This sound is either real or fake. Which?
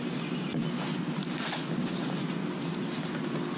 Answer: real